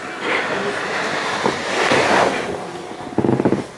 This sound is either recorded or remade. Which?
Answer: recorded